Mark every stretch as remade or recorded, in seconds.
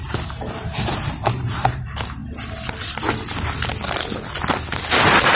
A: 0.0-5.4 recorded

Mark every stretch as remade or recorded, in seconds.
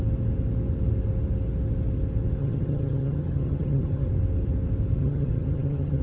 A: 0.0-2.4 recorded; 2.4-4.1 remade; 4.1-5.0 recorded; 5.0-6.0 remade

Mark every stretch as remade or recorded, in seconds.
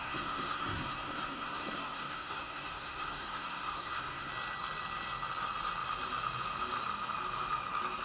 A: 0.0-4.3 remade; 4.3-8.0 recorded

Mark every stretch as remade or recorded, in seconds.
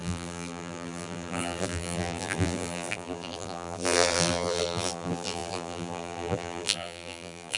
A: 0.0-7.6 remade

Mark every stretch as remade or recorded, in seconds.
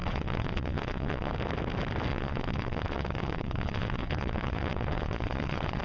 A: 0.0-1.3 remade; 1.3-2.1 recorded; 2.1-5.8 remade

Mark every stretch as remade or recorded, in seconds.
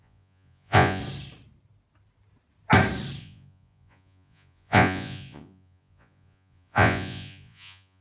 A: 0.0-1.0 remade; 1.0-3.2 recorded; 3.2-8.0 remade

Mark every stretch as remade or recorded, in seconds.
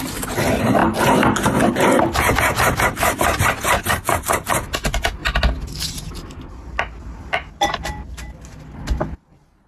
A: 0.0-9.7 recorded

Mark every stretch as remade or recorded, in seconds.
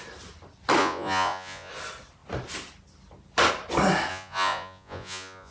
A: 0.0-0.8 recorded; 0.8-1.7 remade; 1.7-4.1 recorded; 4.1-5.5 remade